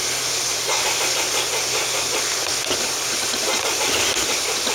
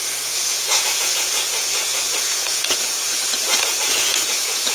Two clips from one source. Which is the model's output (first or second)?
second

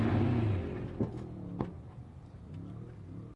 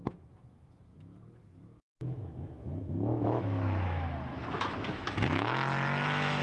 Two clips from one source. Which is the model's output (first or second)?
second